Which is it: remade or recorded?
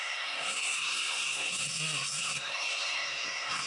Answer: remade